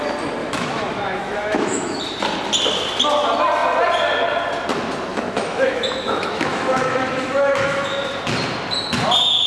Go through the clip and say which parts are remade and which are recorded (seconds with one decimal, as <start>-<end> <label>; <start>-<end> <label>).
0.0-0.4 recorded; 0.4-2.0 remade; 2.0-5.1 recorded; 5.1-8.0 remade; 8.0-9.5 recorded

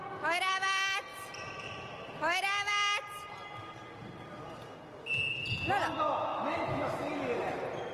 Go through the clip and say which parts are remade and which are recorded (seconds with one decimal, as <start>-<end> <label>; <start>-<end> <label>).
0.0-6.3 recorded; 6.3-7.1 remade; 7.1-7.9 recorded

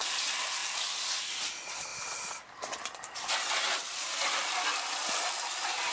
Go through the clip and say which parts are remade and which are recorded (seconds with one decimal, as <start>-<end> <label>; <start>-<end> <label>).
0.0-5.9 recorded

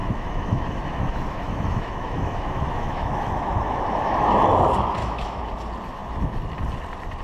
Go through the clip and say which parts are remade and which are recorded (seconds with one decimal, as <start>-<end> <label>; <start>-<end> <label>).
0.0-4.3 remade; 4.3-5.0 recorded; 5.0-5.5 remade; 5.5-7.2 recorded

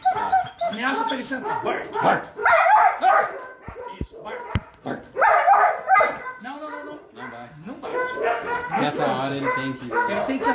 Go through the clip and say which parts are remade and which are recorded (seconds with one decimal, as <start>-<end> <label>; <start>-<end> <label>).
0.0-0.7 recorded; 0.7-1.3 remade; 1.3-7.9 recorded; 7.9-8.9 remade; 8.9-10.5 recorded

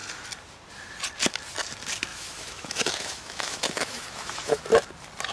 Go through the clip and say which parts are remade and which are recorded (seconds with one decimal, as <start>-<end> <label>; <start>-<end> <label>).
0.0-2.1 recorded; 2.1-4.6 remade; 4.6-5.3 recorded

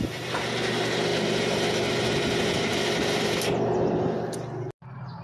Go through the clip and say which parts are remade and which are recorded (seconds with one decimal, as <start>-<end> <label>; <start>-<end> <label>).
0.0-5.2 recorded